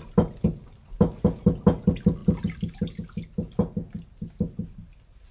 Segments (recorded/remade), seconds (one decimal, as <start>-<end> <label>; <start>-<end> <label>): 0.0-5.3 recorded